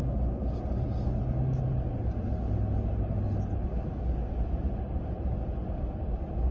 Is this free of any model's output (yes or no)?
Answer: yes